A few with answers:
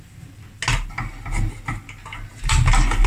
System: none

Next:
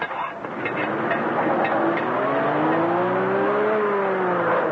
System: none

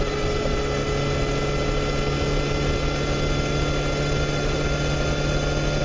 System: none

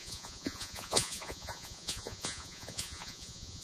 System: vocoder, Vocos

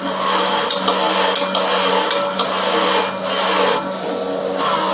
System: none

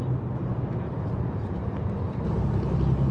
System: none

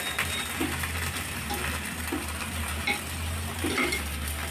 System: none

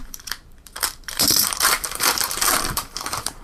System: vocoder, BigVGAN v2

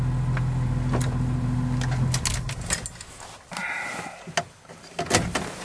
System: none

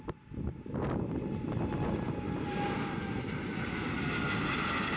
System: none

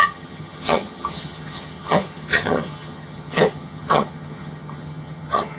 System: vocoder, HiFi-GAN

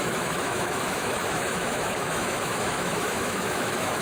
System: autoencoder, DAC-VAE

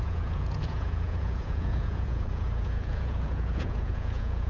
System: vocoder, Vocos